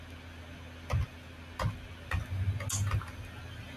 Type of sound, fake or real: real